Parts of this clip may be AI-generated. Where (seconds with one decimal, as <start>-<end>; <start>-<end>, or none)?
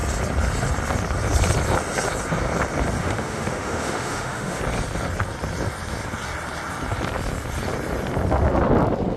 3.0-4.6